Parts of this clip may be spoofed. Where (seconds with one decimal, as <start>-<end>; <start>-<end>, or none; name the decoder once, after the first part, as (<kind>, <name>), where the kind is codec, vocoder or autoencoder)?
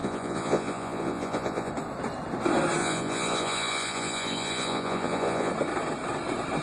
0.0-1.7 (vocoder, Vocos); 2.8-5.5